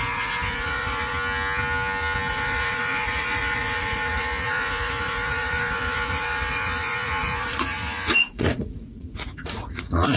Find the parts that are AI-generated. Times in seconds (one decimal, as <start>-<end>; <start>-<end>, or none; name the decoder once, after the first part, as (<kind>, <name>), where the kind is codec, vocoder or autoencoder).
0.0-1.1 (vocoder, Vocos); 2.3-10.2